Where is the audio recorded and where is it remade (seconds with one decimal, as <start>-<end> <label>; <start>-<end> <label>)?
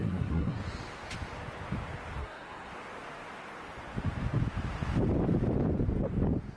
0.0-0.6 remade; 0.6-2.2 recorded; 2.2-2.7 remade; 2.7-6.6 recorded